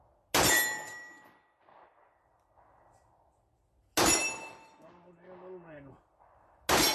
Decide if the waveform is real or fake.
real